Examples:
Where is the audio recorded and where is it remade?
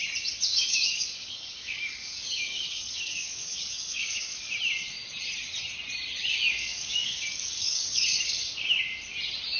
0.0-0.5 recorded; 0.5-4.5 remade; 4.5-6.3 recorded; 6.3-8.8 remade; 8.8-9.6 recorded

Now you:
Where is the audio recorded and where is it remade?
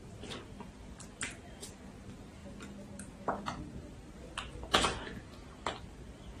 0.0-6.4 recorded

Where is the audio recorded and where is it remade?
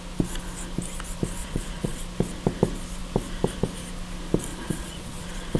0.0-1.4 recorded; 1.4-2.0 remade; 2.0-4.5 recorded; 4.5-5.6 remade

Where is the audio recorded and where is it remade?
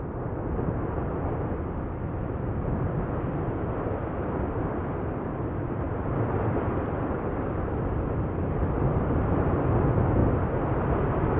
0.0-11.4 recorded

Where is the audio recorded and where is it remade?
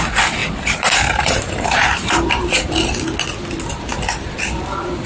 0.0-0.4 recorded; 0.4-2.5 remade; 2.5-5.1 recorded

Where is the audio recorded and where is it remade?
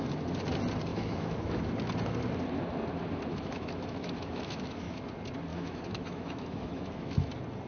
0.0-0.9 recorded; 0.9-1.6 remade; 1.6-3.3 recorded; 3.3-5.0 remade; 5.0-5.5 recorded; 5.5-7.3 remade; 7.3-7.7 recorded